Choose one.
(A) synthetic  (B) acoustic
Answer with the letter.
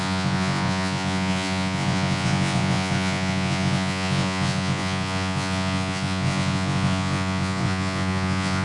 A